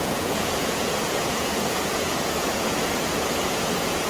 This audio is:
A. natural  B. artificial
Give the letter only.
B